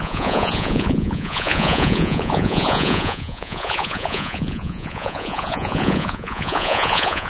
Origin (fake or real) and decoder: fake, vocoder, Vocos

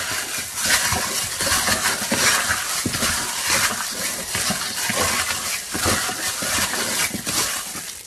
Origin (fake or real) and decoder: real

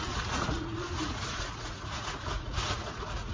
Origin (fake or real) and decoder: fake, vocoder, Vocos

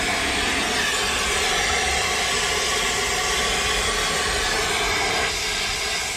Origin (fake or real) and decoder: real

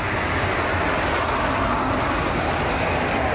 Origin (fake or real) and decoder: real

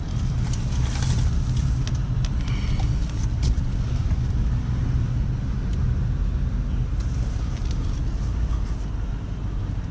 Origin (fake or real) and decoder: real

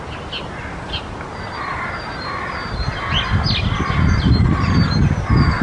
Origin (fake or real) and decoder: real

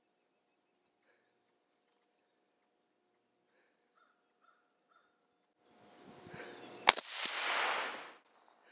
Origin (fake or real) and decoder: real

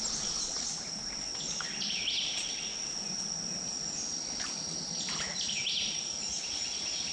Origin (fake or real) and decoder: real